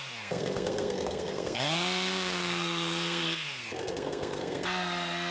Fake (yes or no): yes